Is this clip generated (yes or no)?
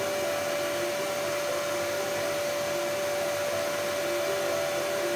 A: no